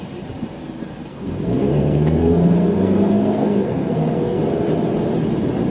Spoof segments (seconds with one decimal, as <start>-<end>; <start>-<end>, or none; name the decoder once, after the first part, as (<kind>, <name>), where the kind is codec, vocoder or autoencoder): 1.0-4.4 (codec, SNAC)